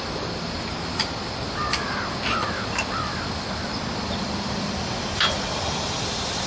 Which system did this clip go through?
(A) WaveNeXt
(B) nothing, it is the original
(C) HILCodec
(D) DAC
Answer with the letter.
B